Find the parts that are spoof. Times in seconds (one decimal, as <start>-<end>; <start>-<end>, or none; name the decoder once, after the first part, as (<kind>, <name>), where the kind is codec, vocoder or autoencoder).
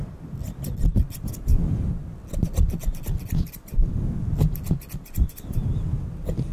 none